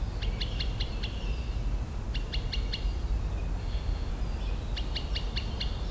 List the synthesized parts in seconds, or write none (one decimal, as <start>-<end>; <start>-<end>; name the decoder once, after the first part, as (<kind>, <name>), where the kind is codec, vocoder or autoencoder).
3.6-4.1 (autoencoder, DAC-VAE)